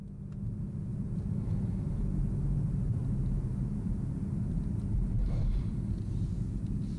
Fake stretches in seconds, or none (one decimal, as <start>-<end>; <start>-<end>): 0.9-2.0; 3.0-3.6